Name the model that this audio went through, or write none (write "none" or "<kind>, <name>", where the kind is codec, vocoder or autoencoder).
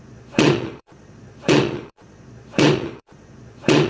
vocoder, Vocos